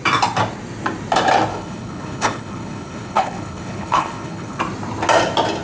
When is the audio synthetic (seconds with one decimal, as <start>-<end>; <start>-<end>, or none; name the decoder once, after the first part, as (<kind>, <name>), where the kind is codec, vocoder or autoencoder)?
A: 1.5-4.6 (codec, HILCodec)